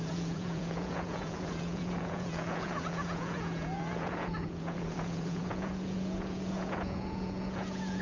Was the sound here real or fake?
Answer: fake